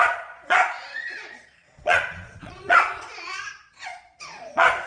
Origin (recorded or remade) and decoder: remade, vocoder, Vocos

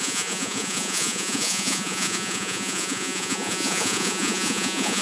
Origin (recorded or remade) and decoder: remade, vocoder, Vocos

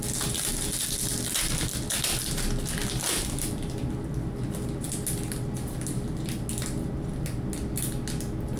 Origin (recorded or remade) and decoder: recorded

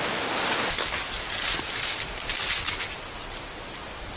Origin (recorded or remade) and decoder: recorded